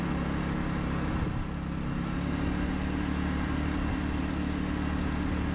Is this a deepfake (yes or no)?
no